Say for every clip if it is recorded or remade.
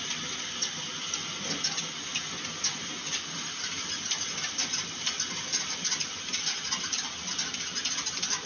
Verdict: recorded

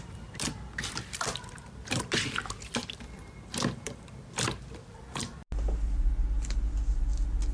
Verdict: recorded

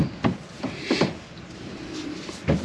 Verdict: recorded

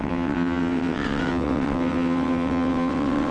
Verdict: remade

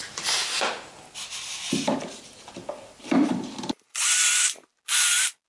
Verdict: recorded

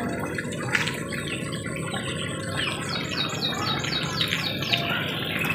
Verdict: recorded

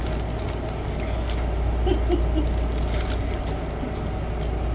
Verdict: recorded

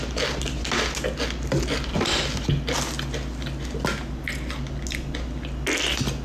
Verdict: recorded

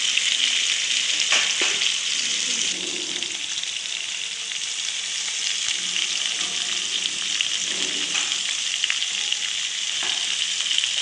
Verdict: recorded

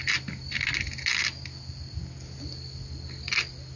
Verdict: recorded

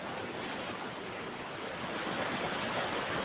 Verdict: recorded